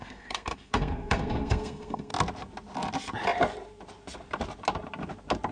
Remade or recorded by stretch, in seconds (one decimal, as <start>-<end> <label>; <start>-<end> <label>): 0.0-2.1 remade; 2.1-5.5 recorded